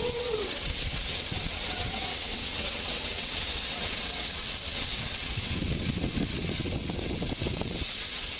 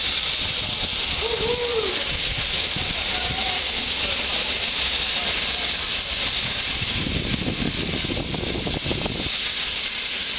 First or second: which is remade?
first